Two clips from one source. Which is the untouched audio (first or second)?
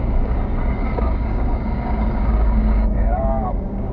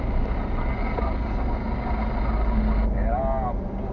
second